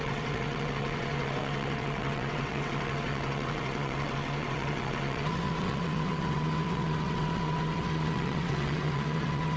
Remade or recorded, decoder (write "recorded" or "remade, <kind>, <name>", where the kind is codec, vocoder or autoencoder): remade, vocoder, WaveNeXt